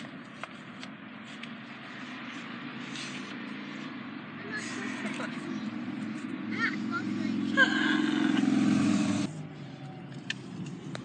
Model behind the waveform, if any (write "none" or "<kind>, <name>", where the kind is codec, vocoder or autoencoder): none